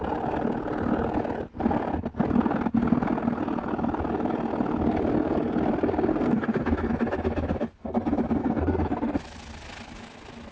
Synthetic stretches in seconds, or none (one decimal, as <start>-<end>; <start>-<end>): 6.1-6.9; 8.4-9.2